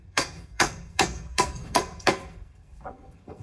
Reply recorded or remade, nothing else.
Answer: remade